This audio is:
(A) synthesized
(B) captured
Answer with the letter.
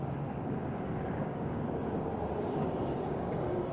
A